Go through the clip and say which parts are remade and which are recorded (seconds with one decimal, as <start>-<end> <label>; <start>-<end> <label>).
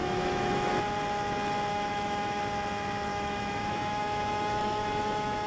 0.0-0.7 remade; 0.7-1.7 recorded; 1.7-2.4 remade; 2.4-3.1 recorded; 3.1-5.5 remade